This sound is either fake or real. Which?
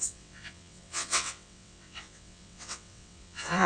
fake